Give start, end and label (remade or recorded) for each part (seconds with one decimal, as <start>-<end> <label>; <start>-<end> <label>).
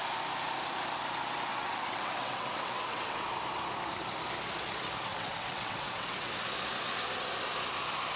0.0-1.5 recorded; 1.5-3.2 remade; 3.2-5.1 recorded; 5.1-6.3 remade; 6.3-8.2 recorded